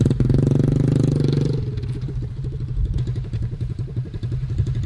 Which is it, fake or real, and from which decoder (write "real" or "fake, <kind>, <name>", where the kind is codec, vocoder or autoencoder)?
fake, vocoder, BigVGAN v2